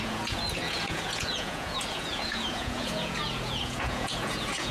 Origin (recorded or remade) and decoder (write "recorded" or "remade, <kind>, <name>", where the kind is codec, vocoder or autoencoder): remade, vocoder, Vocos